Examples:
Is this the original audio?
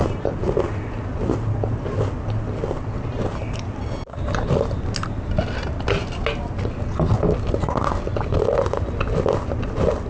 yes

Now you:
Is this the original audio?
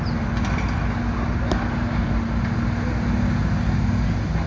yes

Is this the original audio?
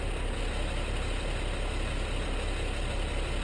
yes